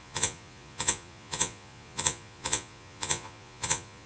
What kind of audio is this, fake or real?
fake